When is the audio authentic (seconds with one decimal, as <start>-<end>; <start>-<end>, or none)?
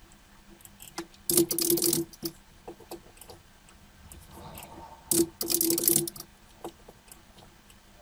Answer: 0.0-8.0